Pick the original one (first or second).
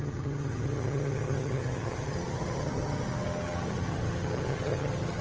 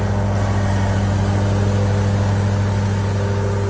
second